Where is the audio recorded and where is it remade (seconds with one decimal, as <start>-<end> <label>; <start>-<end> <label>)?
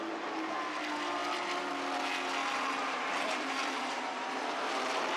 0.0-2.4 recorded; 2.4-4.3 remade; 4.3-5.2 recorded